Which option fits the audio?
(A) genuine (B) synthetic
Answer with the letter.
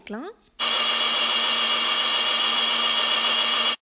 A